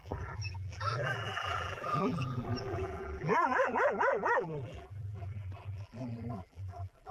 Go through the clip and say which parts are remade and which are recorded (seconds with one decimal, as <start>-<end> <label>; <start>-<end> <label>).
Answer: 0.0-7.1 remade